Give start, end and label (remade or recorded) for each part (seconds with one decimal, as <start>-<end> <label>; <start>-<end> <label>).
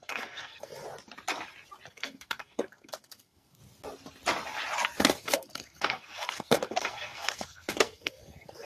0.0-0.7 remade; 0.7-1.9 recorded; 1.9-3.6 remade; 3.6-5.0 recorded; 5.0-8.6 remade